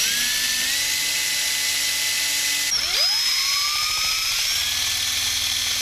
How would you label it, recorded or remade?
recorded